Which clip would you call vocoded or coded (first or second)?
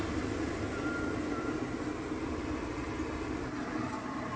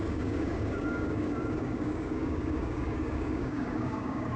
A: second